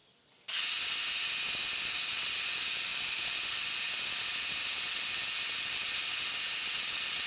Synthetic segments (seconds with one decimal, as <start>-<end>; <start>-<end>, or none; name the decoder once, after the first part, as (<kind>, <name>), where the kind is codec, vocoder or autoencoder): 1.8-2.9 (vocoder, BigVGAN v2)